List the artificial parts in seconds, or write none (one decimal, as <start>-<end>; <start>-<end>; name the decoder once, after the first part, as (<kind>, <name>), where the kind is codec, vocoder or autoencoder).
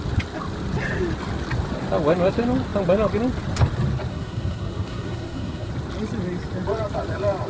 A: 4.1-5.7 (codec, SNAC)